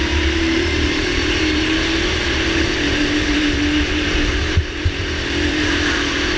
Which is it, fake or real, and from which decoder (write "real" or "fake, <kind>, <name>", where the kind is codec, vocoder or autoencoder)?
fake, vocoder, BigVGAN v2